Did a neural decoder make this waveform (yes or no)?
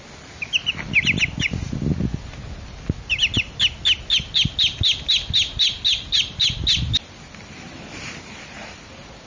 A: no